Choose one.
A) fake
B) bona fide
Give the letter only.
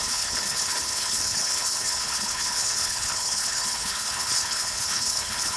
A